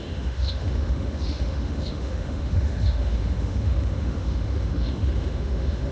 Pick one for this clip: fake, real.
fake